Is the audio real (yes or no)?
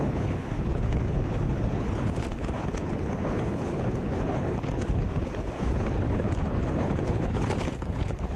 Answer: no